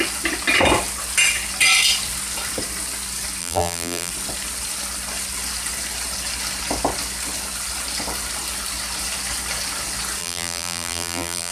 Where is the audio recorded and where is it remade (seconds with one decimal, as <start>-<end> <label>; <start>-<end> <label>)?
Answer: 0.0-3.4 recorded; 3.4-4.1 remade; 4.1-10.2 recorded; 10.2-11.5 remade